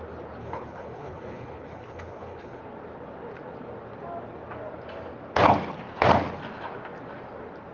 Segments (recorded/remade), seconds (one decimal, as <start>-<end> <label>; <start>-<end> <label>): 0.0-0.4 recorded; 0.4-2.6 remade; 2.6-7.7 recorded